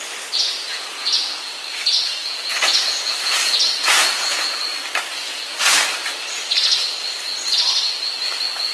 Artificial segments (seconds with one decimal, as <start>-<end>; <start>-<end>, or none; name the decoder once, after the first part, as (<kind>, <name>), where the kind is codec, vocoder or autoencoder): 0.7-1.6 (vocoder, Vocos); 2.2-4.6